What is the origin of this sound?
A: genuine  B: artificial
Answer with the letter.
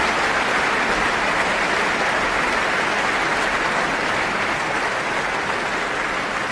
A